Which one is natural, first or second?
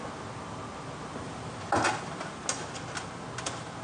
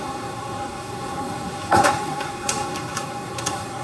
first